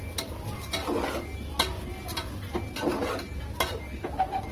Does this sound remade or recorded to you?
recorded